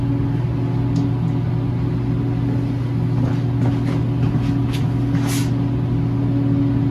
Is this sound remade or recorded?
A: recorded